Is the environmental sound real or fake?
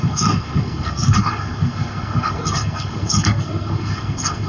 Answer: fake